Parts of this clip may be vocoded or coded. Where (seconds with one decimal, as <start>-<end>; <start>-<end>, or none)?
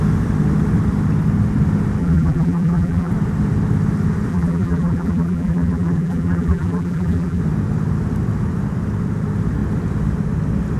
2.0-3.1; 4.3-7.4